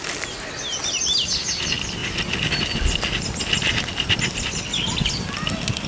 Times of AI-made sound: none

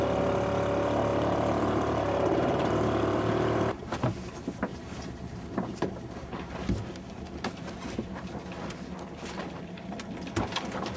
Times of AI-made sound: 1.1-4.3 (vocoder, BigVGAN v2); 4.7-6.7; 9.4-9.9